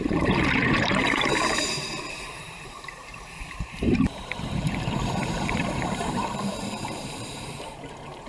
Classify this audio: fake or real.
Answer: fake